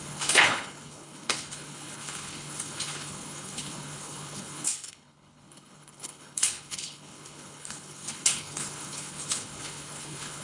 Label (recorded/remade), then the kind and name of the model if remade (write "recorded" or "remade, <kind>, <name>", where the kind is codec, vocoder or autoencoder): remade, codec, HILCodec